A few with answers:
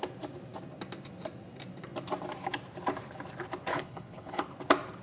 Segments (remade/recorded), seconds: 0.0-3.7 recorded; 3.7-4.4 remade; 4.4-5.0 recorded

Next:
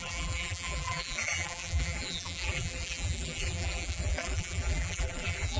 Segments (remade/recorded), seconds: 0.0-5.6 remade